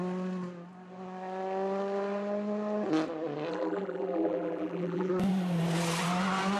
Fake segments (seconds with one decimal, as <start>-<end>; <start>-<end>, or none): 3.5-5.1